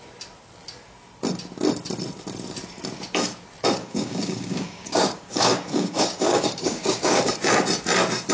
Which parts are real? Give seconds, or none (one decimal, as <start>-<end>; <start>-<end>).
0.0-3.8; 7.3-8.3